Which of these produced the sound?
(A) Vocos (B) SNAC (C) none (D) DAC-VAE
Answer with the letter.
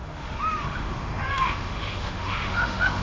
D